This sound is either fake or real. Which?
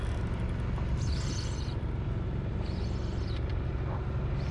real